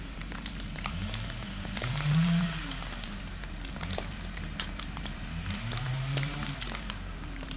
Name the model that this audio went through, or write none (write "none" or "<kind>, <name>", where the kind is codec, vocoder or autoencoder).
vocoder, BigVGAN v2